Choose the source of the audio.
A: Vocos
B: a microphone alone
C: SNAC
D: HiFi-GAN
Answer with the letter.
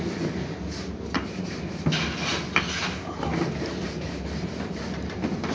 B